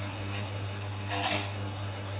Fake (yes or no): yes